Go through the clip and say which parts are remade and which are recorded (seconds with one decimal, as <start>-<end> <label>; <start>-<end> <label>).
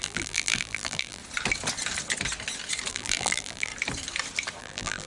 0.0-1.2 remade; 1.2-2.9 recorded; 2.9-3.7 remade; 3.7-4.6 recorded; 4.6-5.1 remade